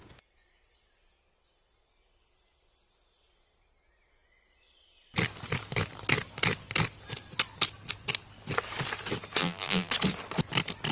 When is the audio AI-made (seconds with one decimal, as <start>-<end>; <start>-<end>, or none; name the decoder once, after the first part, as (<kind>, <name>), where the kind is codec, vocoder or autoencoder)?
9.4-9.9 (vocoder, BigVGAN v2)